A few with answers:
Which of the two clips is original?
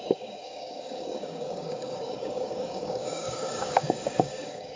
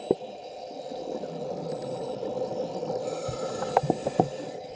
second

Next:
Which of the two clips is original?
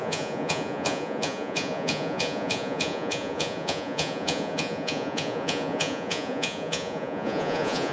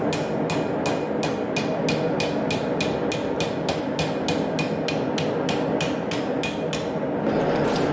second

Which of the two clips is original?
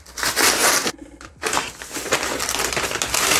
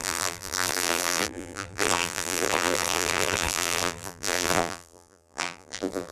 first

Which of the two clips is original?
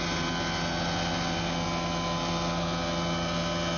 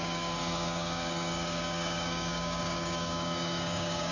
first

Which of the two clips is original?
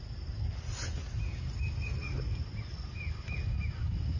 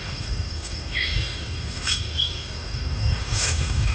first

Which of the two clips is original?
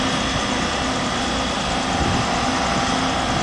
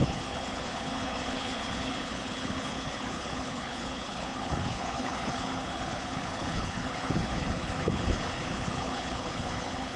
first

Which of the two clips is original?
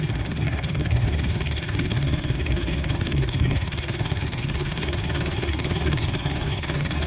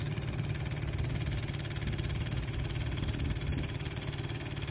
second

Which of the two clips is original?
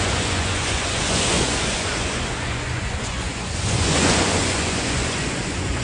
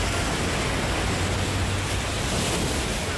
second